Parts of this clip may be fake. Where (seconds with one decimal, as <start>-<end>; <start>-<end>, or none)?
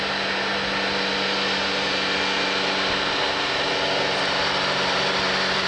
none